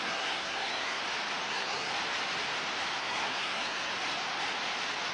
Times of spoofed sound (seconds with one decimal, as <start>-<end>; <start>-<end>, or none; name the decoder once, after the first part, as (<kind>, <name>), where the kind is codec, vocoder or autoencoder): 0.0-1.0 (codec, SNAC); 1.5-1.9; 3.0-3.9